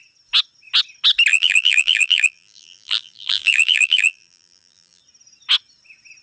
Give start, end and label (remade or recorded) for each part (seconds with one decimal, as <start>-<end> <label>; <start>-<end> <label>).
0.0-1.3 recorded; 1.3-5.0 remade; 5.0-6.2 recorded